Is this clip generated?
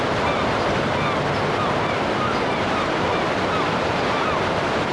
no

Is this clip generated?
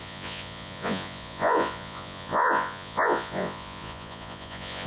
yes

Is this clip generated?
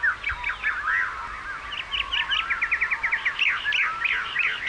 no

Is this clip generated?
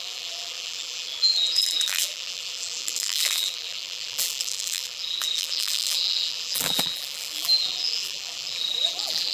yes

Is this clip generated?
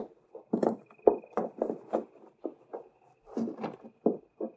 no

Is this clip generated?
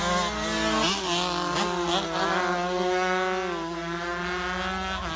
no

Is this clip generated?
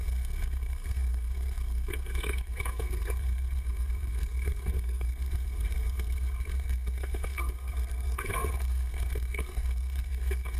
yes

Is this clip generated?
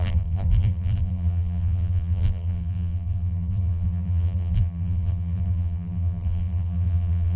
yes